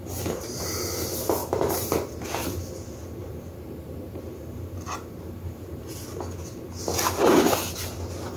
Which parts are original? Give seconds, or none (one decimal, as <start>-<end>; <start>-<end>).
0.0-1.4; 1.9-3.0; 5.8-8.4